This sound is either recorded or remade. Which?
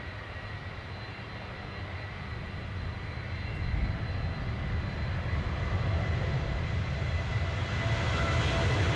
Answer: recorded